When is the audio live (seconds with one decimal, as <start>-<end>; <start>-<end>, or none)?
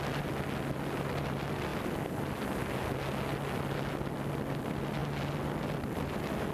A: 0.0-6.5